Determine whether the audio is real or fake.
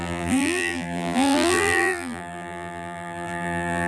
fake